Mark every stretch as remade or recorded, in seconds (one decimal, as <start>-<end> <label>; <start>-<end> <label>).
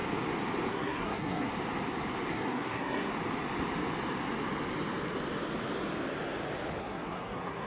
0.0-0.7 recorded; 0.7-1.5 remade; 1.5-2.3 recorded; 2.3-3.1 remade; 3.1-6.8 recorded; 6.8-7.7 remade